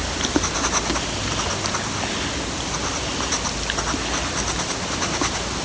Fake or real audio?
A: real